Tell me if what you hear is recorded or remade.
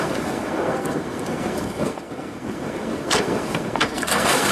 remade